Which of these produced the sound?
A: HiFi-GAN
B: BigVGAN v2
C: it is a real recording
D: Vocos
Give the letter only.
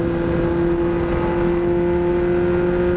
C